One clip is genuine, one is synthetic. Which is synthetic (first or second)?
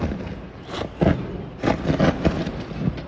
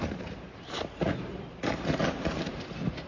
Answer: second